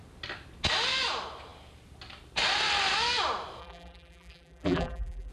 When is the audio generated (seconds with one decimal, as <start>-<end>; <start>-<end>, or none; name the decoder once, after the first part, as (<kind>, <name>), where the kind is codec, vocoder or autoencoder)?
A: 3.6-5.3 (vocoder, BigVGAN v2)